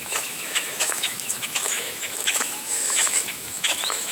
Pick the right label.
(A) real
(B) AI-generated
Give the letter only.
B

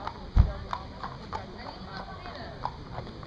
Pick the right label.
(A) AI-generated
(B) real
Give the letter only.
B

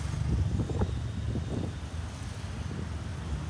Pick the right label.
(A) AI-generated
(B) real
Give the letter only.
B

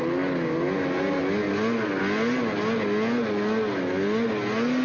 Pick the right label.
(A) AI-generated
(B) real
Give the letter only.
B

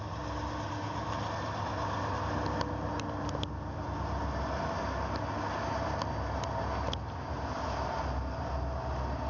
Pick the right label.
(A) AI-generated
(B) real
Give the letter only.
B